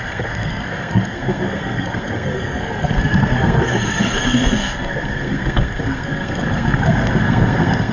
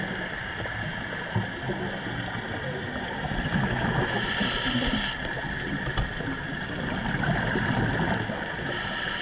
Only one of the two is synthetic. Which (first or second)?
first